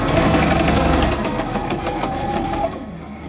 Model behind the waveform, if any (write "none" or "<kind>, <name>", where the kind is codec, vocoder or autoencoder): codec, SNAC